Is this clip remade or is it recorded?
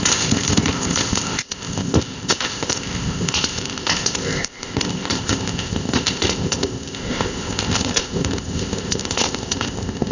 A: remade